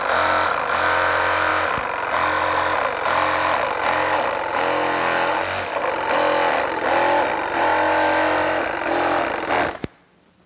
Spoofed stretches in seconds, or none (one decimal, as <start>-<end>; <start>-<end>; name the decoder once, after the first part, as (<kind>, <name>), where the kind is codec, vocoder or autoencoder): none